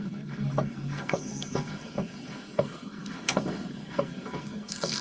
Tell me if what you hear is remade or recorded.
remade